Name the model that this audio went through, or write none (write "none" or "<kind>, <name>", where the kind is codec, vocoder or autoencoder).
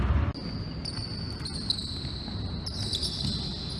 none